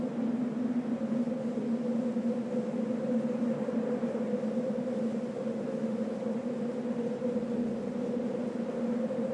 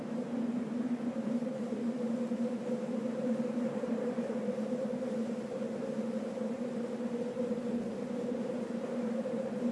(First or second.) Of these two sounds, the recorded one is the first